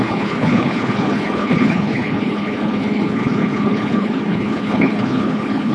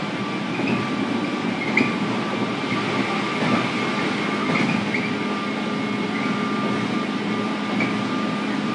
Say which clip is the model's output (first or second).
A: first